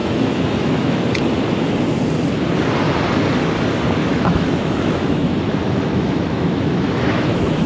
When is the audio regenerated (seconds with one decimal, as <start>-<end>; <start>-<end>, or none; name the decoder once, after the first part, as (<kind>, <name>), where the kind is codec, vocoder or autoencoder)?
0.0-1.0 (autoencoder, DAC-VAE); 4.0-7.7